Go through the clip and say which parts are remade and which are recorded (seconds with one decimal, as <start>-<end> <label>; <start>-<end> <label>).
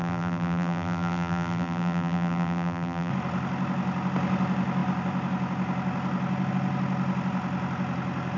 0.0-3.1 remade; 3.1-8.4 recorded